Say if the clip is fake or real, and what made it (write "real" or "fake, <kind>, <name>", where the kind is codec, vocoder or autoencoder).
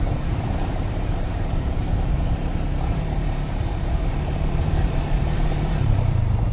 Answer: fake, vocoder, BigVGAN v2